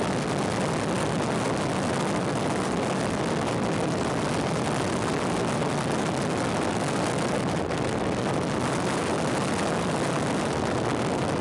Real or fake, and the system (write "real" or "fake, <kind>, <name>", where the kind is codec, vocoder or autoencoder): real